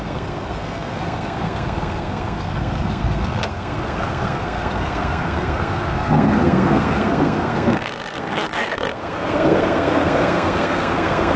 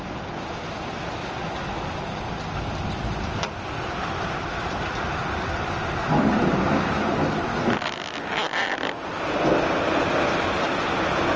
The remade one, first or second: first